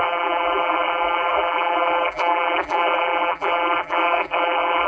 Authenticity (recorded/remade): remade